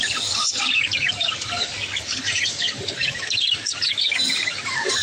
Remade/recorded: remade